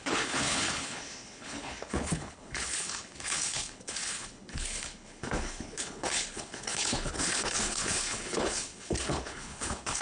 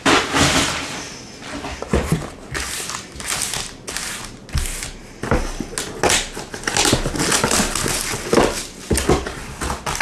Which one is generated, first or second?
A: first